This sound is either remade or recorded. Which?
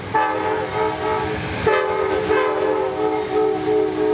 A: recorded